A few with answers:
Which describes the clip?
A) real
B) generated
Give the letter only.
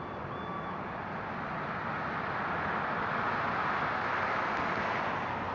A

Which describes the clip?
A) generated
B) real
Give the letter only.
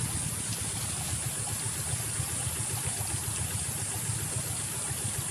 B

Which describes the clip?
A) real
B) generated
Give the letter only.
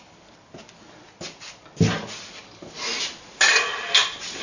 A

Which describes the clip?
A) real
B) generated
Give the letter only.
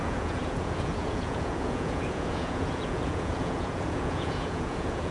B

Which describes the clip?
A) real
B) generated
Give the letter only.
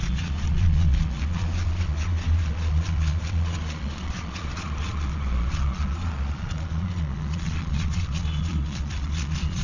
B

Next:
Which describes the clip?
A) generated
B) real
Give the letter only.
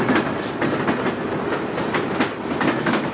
B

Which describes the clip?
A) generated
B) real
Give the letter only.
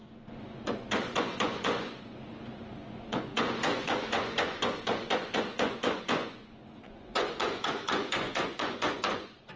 A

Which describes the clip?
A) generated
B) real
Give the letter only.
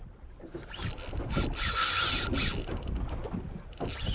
B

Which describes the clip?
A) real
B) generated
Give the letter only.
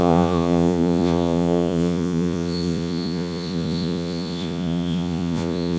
B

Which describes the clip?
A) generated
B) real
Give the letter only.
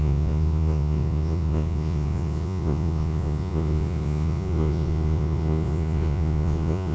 A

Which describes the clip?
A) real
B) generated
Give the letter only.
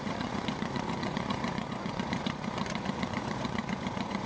B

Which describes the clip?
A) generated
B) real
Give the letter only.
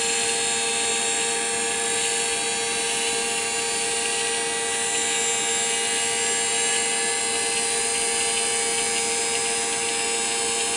B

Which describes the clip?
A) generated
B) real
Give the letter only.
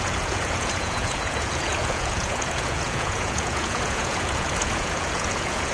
A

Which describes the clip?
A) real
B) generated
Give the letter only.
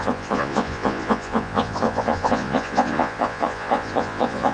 B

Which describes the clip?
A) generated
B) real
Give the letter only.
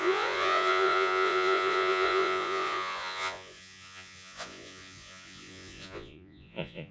A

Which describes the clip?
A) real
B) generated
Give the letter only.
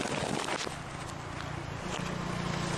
A